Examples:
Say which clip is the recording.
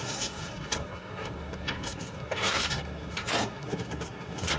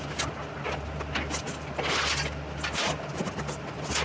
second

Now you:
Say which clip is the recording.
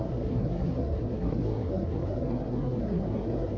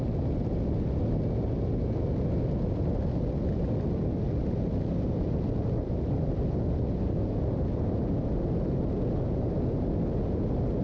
second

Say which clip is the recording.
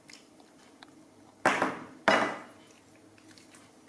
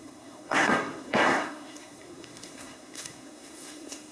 first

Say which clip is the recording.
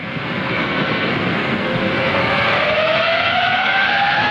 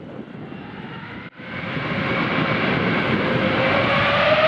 second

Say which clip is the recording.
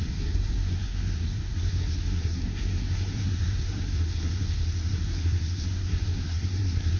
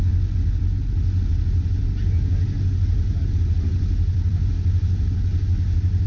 second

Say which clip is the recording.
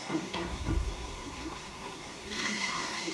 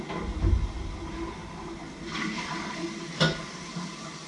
second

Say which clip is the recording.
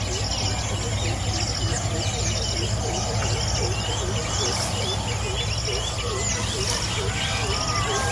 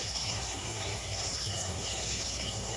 first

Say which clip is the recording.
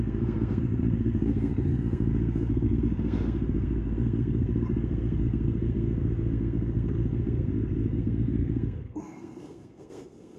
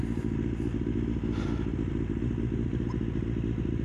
second